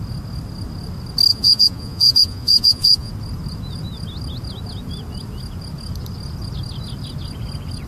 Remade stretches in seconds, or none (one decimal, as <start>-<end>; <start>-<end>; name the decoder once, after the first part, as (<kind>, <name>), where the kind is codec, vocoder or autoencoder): 1.3-3.1 (vocoder, Vocos)